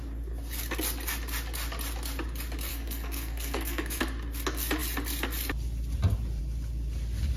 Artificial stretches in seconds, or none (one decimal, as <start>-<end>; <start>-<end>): 2.7-4.0